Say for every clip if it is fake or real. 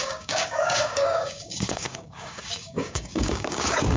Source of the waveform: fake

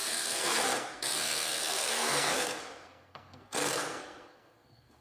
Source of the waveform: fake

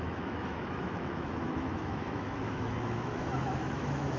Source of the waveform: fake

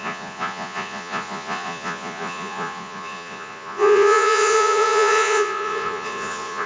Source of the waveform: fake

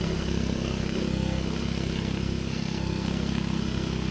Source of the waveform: fake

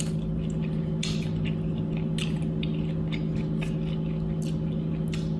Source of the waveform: real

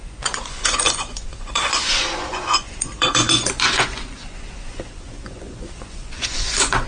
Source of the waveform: fake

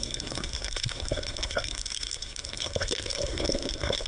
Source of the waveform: fake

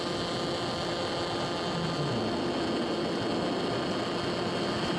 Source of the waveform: real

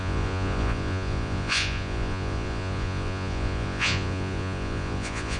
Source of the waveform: fake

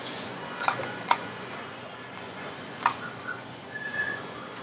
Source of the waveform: fake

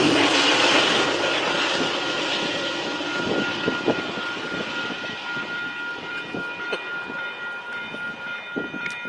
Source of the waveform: real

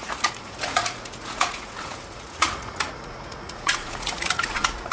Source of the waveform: fake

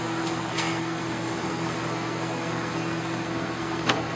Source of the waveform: fake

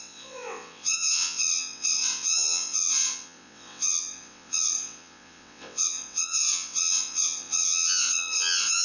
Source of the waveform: fake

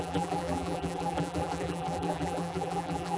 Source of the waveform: fake